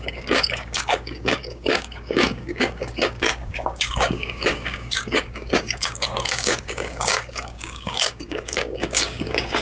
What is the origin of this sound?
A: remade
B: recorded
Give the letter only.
A